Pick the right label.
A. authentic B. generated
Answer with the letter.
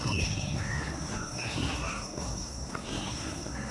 B